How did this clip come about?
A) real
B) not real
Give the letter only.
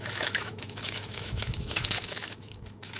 B